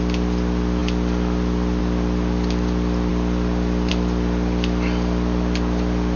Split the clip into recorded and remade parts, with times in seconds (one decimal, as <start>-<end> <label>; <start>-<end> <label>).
0.0-6.2 recorded